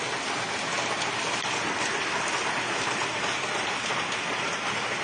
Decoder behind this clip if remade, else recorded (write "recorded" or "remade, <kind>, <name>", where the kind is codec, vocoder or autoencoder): recorded